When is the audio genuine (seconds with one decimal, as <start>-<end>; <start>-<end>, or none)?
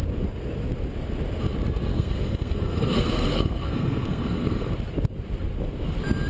0.0-1.9; 4.7-6.3